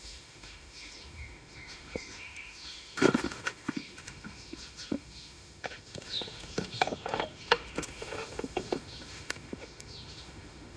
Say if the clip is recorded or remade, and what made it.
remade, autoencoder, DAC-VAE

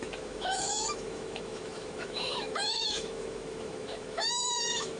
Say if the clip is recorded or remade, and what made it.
remade, autoencoder, DAC-VAE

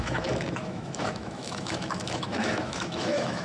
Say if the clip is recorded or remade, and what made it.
remade, autoencoder, DAC-VAE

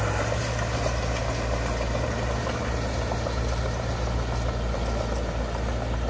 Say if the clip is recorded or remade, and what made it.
recorded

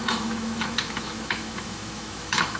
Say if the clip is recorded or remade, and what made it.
remade, autoencoder, DAC-VAE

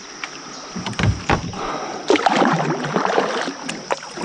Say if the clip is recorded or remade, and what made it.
recorded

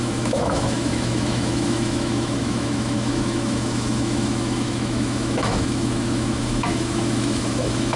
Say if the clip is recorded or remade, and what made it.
remade, autoencoder, DAC-VAE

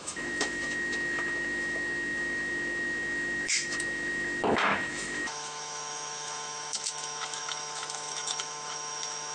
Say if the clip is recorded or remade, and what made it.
remade, autoencoder, DAC-VAE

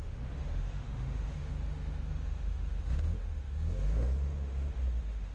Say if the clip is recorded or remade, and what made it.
remade, autoencoder, DAC-VAE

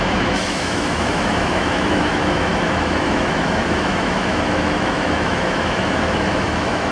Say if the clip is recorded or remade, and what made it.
remade, autoencoder, DAC-VAE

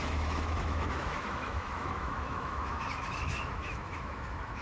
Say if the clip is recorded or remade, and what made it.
remade, autoencoder, DAC-VAE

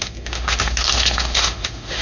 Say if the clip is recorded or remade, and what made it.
remade, autoencoder, DAC-VAE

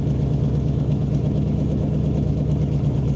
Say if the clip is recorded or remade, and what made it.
remade, autoencoder, DAC-VAE